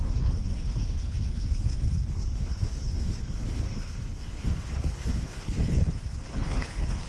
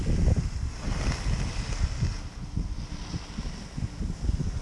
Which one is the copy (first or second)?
first